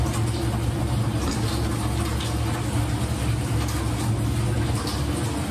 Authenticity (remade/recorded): recorded